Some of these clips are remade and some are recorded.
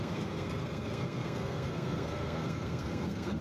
remade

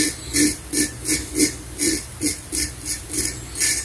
recorded